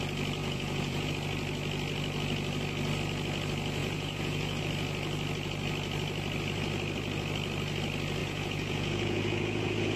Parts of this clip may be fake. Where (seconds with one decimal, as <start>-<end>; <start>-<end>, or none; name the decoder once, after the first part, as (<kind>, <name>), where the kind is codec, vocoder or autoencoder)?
0.4-1.1 (vocoder, Vocos); 3.8-4.6; 8.2-10.0